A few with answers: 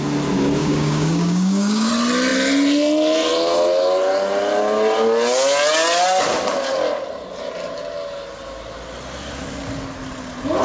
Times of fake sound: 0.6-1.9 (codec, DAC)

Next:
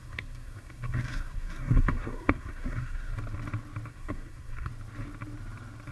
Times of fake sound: 0.0-3.2 (codec, SNAC); 3.9-4.7

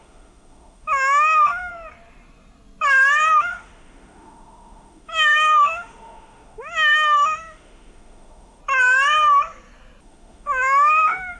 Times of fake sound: 0.0-1.7 (autoencoder, DAC-VAE); 3.4-8.6; 10.0-11.4